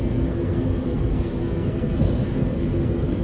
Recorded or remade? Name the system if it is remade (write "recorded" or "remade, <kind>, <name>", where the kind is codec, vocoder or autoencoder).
remade, codec, SNAC